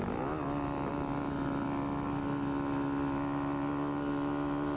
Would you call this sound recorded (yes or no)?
yes